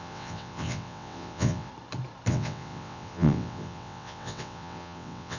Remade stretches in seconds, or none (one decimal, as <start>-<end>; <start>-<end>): 0.0-1.7; 2.3-5.4